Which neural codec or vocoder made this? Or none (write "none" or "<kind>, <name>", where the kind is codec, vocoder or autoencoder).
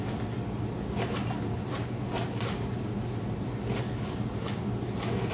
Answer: none